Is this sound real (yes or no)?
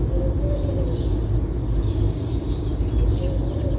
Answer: yes